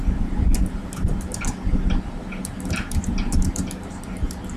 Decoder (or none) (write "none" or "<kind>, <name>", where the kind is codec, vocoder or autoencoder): none